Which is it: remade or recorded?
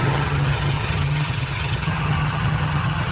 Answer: remade